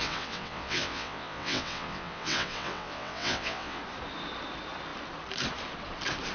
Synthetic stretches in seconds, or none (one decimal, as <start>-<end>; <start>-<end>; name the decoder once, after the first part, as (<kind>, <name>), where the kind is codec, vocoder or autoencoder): 0.0-3.8 (vocoder, WaveNeXt)